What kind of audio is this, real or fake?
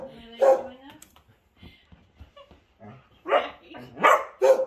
real